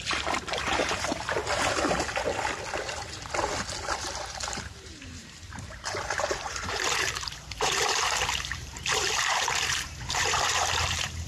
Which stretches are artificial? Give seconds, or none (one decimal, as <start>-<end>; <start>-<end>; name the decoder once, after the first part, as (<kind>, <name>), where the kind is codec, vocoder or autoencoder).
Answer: 0.0-1.4 (vocoder, BigVGAN v2); 3.8-11.3